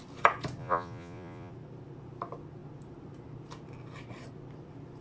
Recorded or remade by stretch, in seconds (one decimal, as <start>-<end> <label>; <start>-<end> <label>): 0.0-0.6 recorded; 0.6-1.5 remade; 1.5-5.0 recorded